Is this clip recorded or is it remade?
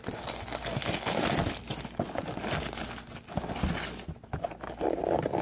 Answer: recorded